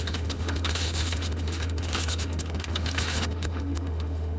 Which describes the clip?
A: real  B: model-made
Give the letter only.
B